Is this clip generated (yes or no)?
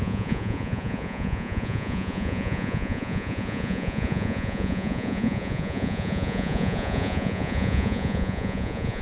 yes